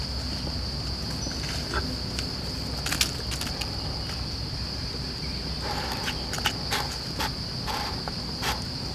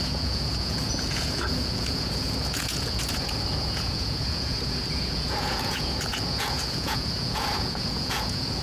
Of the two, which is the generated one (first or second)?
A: second